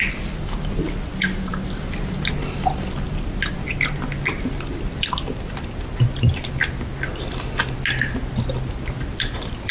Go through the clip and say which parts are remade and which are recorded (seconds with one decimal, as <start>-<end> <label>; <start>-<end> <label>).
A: 0.0-9.7 recorded